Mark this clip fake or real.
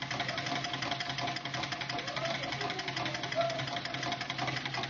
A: real